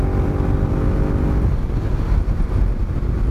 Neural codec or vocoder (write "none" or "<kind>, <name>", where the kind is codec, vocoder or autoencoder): none